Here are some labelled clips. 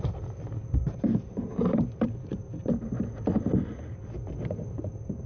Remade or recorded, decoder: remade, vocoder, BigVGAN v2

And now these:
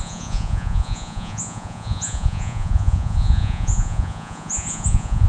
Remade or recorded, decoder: remade, vocoder, Vocos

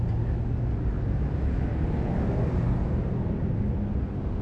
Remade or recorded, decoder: recorded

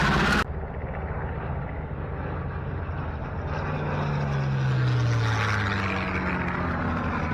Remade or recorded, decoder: recorded